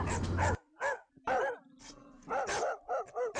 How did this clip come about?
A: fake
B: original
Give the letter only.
B